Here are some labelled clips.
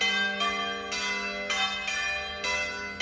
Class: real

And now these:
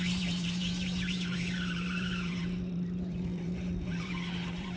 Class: fake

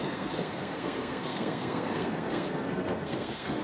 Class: fake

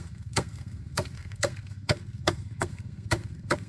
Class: fake